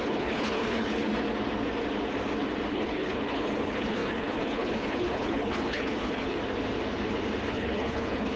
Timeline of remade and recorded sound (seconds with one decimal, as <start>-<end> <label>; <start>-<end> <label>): 0.0-1.1 remade; 1.1-2.7 recorded; 2.7-6.4 remade; 6.4-7.5 recorded; 7.5-8.4 remade

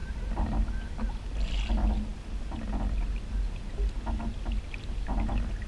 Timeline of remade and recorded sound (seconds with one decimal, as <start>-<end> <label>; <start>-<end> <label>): 0.0-5.7 recorded